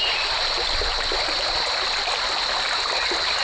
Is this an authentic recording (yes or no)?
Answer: yes